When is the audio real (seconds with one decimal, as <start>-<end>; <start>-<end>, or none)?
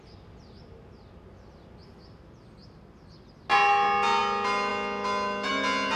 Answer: 0.0-6.0